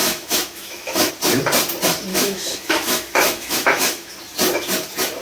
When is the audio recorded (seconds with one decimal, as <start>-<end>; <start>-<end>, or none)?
1.1-2.1; 4.1-5.2